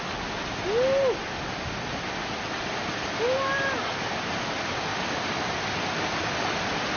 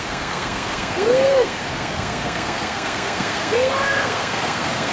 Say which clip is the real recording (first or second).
first